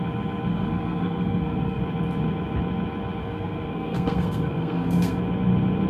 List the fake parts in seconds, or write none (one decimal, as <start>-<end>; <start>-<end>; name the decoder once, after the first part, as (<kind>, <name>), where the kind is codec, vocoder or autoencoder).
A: 0.5-1.8 (codec, SNAC); 3.2-5.2